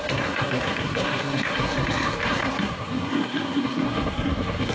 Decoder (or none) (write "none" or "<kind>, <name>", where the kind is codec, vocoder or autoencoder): codec, SNAC